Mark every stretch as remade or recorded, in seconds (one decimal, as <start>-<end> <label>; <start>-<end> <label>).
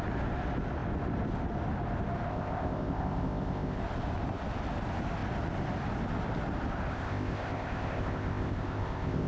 0.0-2.3 recorded; 2.3-3.8 remade; 3.8-6.9 recorded; 6.9-9.3 remade